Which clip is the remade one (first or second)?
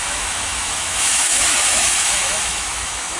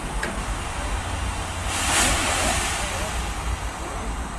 first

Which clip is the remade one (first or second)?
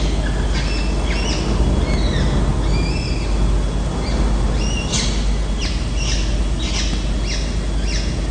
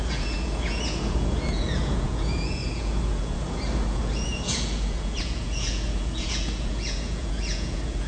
second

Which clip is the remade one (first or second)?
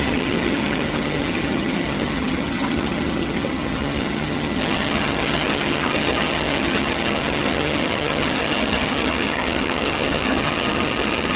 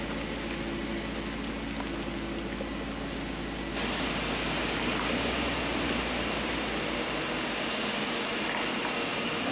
first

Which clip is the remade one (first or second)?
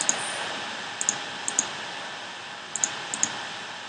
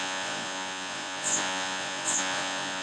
second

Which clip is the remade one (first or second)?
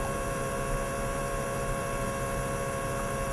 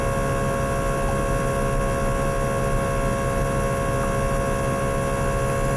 first